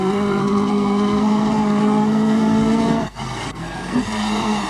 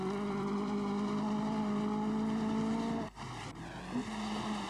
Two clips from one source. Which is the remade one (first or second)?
first